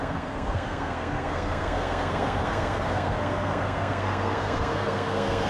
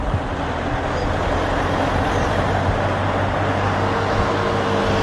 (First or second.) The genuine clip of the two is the second